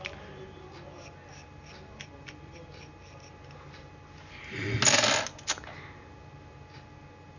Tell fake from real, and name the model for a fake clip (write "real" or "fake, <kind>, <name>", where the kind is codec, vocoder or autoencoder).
real